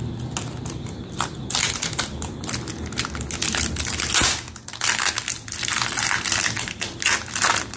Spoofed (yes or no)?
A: no